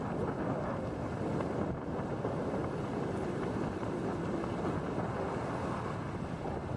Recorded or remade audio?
recorded